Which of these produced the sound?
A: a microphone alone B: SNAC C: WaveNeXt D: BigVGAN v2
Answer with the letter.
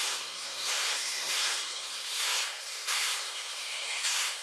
B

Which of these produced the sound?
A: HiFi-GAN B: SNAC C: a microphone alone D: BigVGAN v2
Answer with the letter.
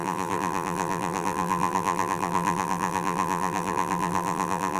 D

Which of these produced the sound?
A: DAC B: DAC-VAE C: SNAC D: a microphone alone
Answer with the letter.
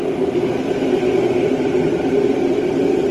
D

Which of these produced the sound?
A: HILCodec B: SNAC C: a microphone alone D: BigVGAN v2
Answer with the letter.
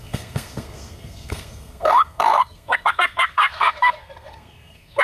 B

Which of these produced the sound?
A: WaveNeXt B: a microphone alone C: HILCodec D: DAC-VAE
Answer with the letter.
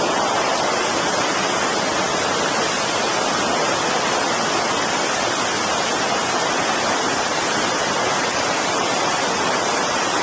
B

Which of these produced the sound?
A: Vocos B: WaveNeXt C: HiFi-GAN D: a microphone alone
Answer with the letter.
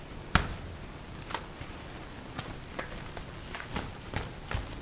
D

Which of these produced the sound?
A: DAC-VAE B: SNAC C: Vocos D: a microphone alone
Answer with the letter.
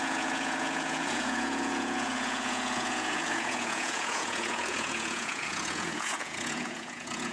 C